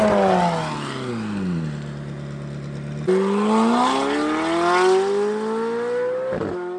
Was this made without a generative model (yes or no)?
yes